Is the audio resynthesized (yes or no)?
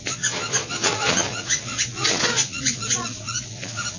yes